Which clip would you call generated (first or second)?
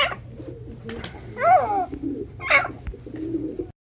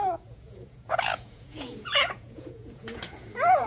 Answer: second